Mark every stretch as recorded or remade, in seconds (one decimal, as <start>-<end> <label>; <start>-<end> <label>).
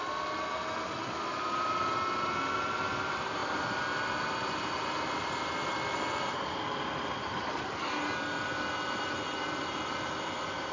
0.0-10.7 recorded